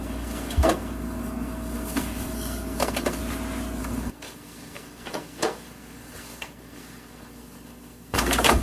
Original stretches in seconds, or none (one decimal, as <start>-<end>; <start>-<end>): 3.2-3.8